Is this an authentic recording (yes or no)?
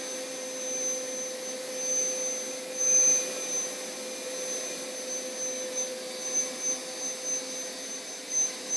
yes